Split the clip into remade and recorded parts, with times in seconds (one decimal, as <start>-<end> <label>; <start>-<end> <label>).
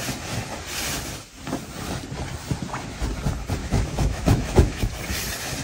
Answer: 0.0-3.6 recorded; 3.6-4.9 remade; 4.9-5.6 recorded